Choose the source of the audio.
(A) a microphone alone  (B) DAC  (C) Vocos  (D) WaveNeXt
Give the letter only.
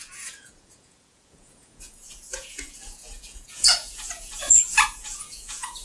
C